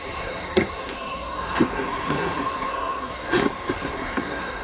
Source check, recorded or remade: remade